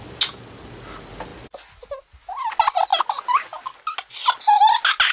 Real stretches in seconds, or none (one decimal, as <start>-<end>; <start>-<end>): 0.0-5.1